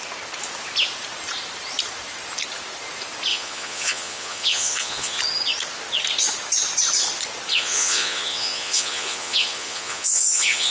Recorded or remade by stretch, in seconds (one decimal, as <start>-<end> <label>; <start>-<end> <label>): 0.0-3.3 recorded; 3.3-5.2 remade; 5.2-7.5 recorded; 7.5-10.7 remade

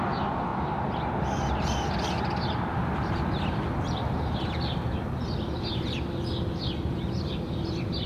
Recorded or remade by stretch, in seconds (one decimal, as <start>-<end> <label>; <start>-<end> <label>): 0.0-0.5 remade; 0.5-1.2 recorded; 1.2-8.1 remade

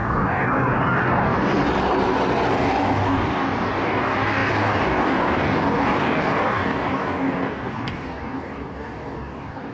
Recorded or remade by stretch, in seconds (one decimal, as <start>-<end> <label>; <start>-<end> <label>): 0.0-1.6 remade; 1.6-2.5 recorded; 2.5-9.7 remade